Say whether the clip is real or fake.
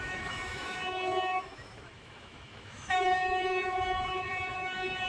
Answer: fake